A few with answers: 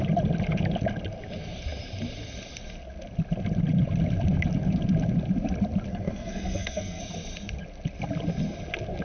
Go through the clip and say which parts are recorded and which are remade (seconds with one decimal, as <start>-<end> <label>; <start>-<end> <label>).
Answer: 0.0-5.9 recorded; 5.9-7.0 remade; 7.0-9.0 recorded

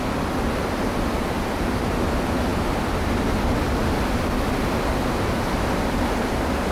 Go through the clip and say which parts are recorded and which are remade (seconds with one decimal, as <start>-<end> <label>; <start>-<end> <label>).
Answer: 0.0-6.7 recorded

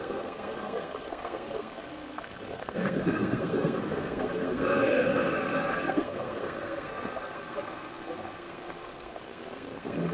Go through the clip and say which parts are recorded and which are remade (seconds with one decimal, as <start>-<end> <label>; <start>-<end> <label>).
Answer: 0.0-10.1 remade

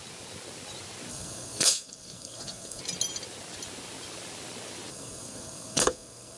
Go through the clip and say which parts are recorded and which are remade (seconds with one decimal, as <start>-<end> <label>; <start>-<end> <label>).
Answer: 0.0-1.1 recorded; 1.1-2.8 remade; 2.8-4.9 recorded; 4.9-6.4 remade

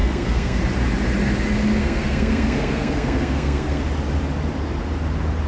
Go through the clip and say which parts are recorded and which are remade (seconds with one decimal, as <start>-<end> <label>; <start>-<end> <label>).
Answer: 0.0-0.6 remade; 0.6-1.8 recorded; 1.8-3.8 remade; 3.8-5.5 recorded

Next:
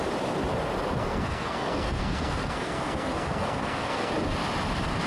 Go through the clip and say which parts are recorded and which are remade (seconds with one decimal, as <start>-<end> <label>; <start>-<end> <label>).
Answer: 0.0-1.0 recorded; 1.0-4.1 remade; 4.1-5.1 recorded